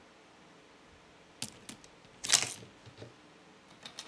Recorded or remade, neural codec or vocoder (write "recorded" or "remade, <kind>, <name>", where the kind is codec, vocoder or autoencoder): recorded